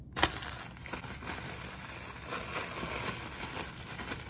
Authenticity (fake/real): real